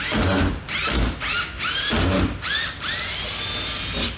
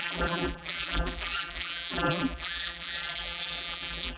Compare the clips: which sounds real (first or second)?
first